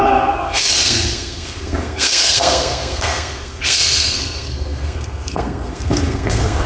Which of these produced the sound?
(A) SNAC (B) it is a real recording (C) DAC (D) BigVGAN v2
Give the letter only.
A